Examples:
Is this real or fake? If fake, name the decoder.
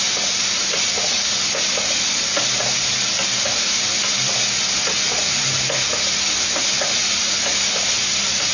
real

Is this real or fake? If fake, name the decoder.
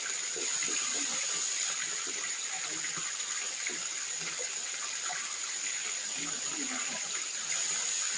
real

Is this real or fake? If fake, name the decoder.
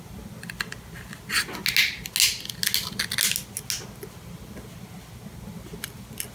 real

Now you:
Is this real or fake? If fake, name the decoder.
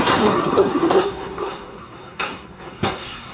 fake, codec, SNAC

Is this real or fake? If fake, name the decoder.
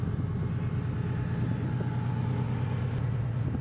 real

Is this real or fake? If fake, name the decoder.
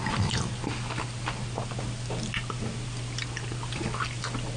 real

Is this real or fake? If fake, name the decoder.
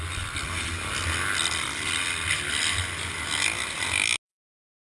real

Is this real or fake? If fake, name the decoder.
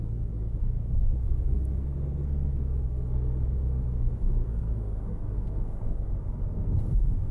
fake, codec, SNAC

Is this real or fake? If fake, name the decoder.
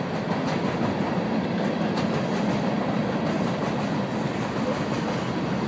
real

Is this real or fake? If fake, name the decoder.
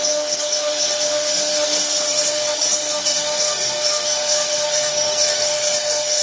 fake, codec, SNAC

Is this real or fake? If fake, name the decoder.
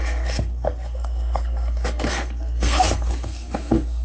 fake, codec, SNAC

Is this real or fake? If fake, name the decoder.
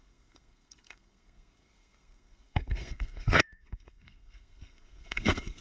fake, codec, SNAC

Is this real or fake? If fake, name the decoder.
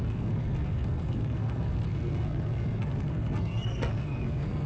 fake, codec, SNAC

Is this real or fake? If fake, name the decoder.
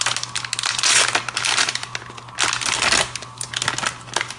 real